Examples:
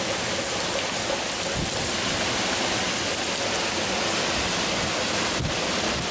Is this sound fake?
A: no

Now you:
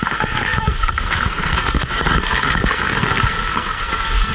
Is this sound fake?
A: yes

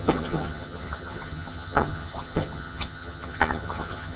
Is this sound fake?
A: yes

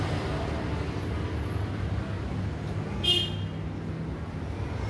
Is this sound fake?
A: no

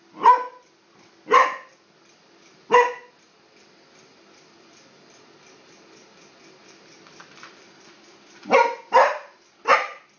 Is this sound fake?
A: no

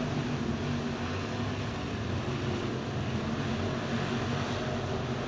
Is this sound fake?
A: no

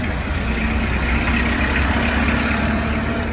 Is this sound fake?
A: no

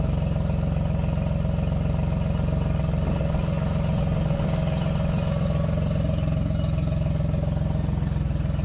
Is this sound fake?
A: no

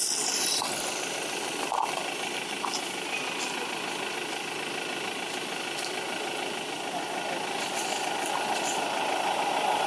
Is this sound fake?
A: no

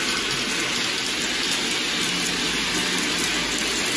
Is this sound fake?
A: no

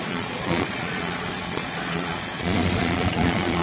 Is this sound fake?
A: yes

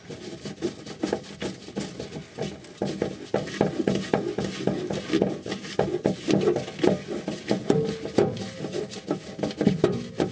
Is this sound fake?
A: no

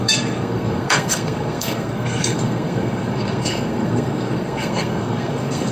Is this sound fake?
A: yes